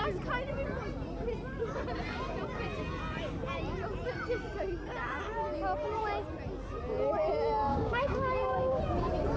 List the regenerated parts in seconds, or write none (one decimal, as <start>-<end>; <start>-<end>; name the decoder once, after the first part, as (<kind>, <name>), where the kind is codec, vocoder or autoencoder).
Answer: 7.7-8.8 (codec, DAC)